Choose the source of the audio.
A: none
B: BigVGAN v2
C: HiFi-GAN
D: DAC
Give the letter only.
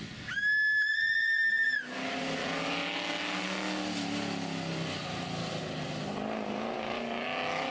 A